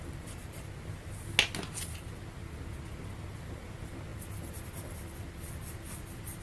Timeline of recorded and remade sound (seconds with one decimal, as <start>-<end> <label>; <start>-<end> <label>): 0.0-6.4 recorded